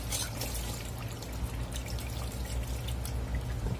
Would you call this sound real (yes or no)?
yes